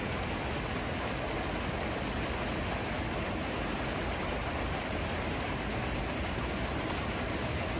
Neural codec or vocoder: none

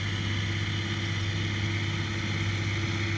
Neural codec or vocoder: none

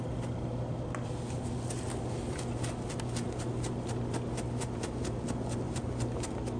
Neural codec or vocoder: none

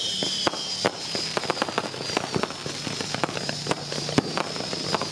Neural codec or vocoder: none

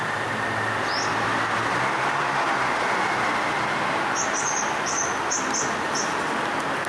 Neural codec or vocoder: none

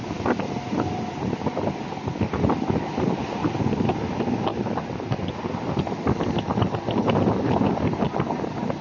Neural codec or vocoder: none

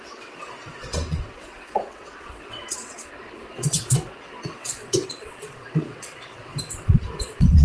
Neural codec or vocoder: vocoder, WaveNeXt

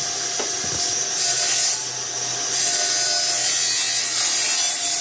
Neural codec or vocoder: none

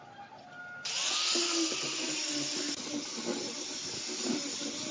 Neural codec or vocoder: none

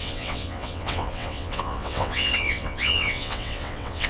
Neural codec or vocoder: vocoder, WaveNeXt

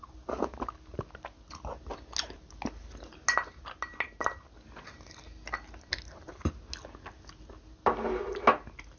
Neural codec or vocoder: none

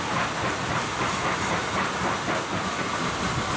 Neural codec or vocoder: none